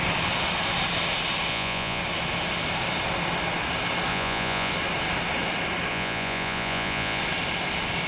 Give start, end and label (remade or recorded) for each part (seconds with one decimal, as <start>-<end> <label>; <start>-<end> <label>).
0.0-1.5 recorded; 1.5-2.0 remade; 2.0-4.1 recorded; 4.1-4.7 remade; 4.7-5.9 recorded; 5.9-7.2 remade; 7.2-8.1 recorded